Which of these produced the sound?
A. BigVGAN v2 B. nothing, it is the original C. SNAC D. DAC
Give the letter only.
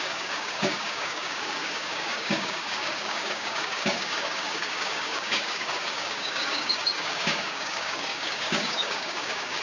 D